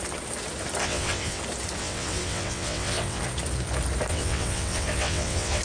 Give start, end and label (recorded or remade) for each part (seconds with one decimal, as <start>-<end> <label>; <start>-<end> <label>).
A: 0.0-0.8 recorded; 0.8-1.4 remade; 1.4-1.8 recorded; 1.8-3.2 remade; 3.2-4.1 recorded; 4.1-5.6 remade